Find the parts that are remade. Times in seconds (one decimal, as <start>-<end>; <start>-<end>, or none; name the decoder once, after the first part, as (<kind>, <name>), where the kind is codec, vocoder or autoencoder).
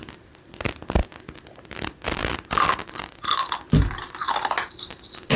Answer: 1.0-4.2 (vocoder, BigVGAN v2)